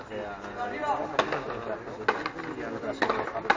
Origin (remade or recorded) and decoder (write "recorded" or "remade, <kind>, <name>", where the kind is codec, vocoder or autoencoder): recorded